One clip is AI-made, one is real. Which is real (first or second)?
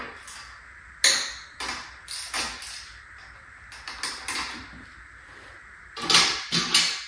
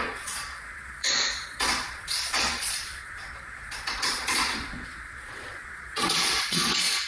first